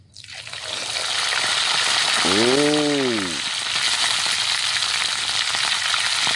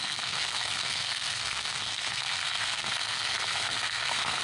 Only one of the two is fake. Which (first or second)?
second